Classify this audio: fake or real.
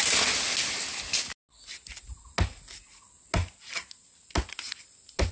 real